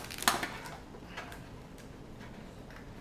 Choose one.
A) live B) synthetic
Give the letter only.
A